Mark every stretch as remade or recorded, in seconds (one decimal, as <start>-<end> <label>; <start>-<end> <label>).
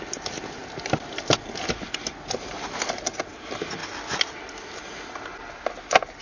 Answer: 0.0-6.2 recorded